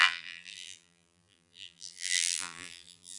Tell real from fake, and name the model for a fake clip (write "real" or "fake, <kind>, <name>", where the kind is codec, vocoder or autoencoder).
fake, vocoder, BigVGAN v2